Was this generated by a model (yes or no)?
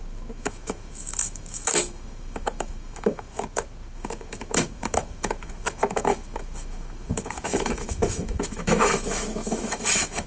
yes